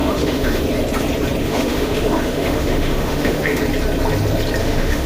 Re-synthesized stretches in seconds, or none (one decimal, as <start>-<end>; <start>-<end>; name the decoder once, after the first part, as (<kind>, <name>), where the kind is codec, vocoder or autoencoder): 0.0-0.6 (autoencoder, DAC-VAE); 1.4-3.6; 4.6-5.1